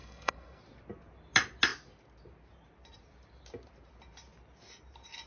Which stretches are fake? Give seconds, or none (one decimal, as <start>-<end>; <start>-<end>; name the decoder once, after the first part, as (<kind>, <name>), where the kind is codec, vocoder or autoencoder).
0.0-0.6 (codec, SNAC)